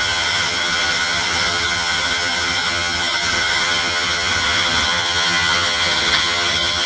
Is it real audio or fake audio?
fake